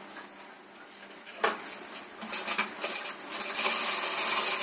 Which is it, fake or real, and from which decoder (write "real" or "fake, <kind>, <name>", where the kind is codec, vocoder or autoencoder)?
real